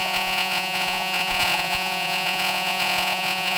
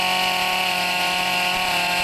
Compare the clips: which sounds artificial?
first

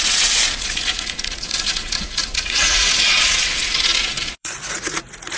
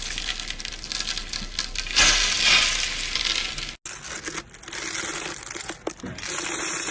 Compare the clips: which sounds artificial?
first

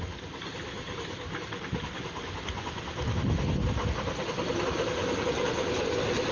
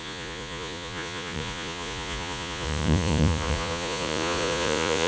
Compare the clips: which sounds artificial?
second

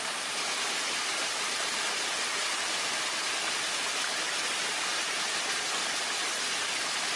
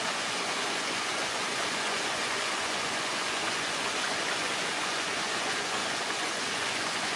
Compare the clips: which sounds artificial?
second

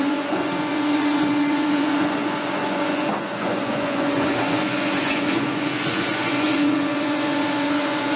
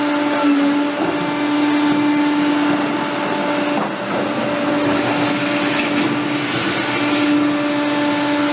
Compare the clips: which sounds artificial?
first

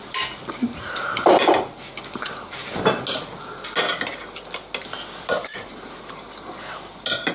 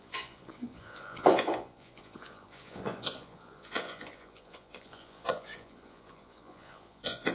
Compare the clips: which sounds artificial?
second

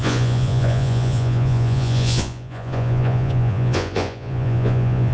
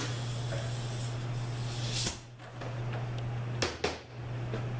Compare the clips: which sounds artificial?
first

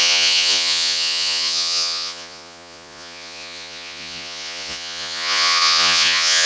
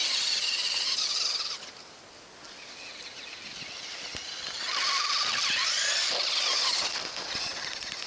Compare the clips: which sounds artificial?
first